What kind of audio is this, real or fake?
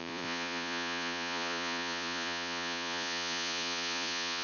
fake